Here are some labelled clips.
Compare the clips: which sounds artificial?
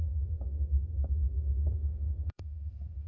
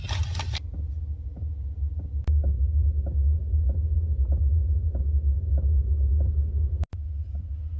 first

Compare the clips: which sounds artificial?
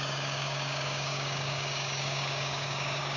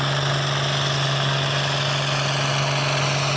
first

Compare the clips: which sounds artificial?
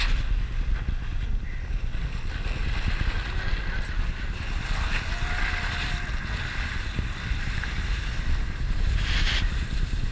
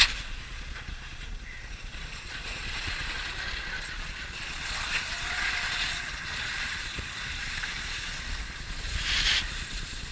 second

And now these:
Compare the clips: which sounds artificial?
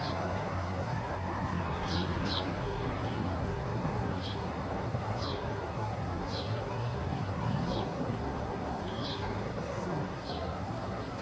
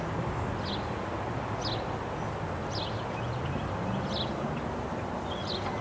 first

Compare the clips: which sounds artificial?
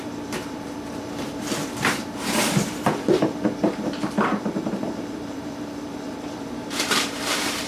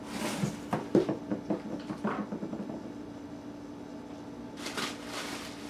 first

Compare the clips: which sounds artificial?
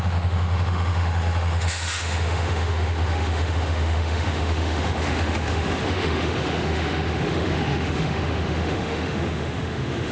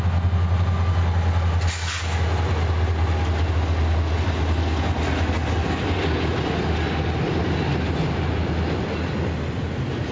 first